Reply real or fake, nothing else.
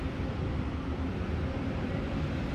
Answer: fake